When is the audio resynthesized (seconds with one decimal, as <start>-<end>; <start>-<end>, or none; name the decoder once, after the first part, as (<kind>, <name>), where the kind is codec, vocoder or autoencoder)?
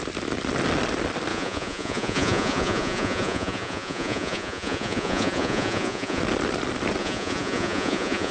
1.3-6.2 (vocoder, Vocos); 7.0-8.3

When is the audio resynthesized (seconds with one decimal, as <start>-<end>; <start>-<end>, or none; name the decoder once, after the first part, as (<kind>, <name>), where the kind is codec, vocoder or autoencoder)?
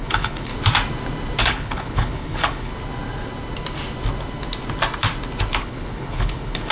0.0-0.5 (codec, HILCodec); 1.4-2.7; 5.6-6.7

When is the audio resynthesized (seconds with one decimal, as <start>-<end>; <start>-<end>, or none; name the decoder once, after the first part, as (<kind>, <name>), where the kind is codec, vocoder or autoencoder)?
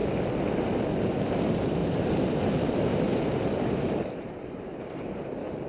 1.8-5.2 (vocoder, BigVGAN v2)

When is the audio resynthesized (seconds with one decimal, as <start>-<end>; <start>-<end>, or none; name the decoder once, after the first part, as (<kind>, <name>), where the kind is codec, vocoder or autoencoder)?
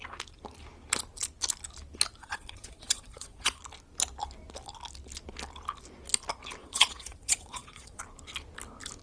2.2-3.6 (vocoder, Vocos); 6.6-8.0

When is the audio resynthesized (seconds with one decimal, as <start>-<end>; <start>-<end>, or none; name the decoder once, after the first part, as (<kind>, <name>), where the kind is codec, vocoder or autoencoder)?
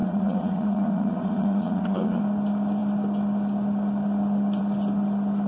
0.0-2.2 (vocoder, Vocos)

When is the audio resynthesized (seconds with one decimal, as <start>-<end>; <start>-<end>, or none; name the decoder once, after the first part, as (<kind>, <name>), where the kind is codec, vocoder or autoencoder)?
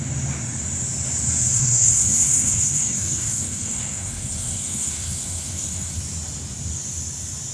1.5-6.0 (codec, SNAC)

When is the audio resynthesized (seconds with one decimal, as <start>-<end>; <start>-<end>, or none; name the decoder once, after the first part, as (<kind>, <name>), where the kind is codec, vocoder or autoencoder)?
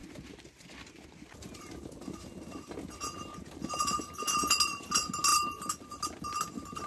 none